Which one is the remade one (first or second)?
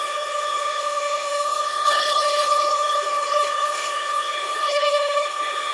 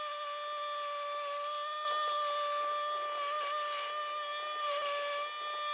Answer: first